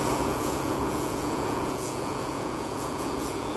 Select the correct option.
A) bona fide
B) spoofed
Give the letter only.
B